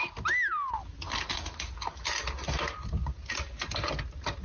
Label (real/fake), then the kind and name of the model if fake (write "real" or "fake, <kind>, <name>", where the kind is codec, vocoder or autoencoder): real